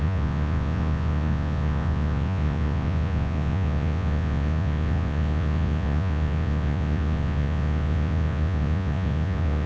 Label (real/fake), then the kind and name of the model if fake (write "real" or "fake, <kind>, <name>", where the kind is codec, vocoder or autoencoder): fake, vocoder, Vocos